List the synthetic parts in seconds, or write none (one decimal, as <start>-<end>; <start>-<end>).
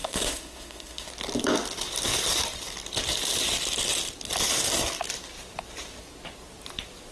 0.0-1.1